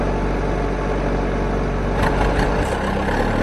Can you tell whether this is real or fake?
real